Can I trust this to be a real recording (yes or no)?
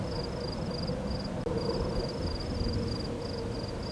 yes